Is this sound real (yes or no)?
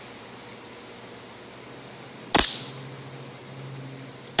yes